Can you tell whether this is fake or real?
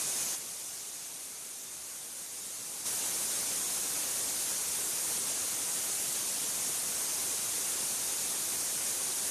real